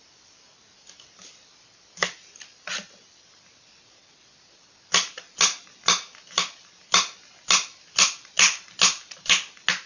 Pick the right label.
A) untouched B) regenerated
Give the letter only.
A